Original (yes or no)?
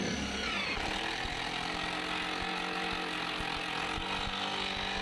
yes